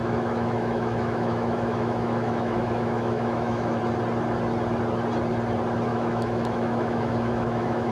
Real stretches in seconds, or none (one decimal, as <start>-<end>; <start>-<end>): 3.8-5.9